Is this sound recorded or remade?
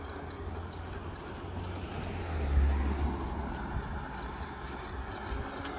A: recorded